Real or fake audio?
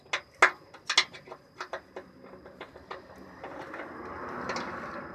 real